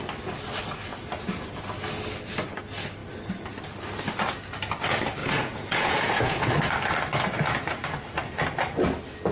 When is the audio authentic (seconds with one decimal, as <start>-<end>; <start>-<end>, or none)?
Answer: 0.0-5.2; 6.5-9.3